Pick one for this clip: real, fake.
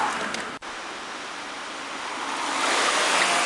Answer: real